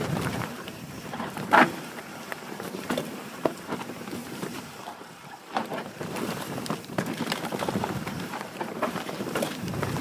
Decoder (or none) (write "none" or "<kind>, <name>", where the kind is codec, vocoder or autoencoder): vocoder, BigVGAN v2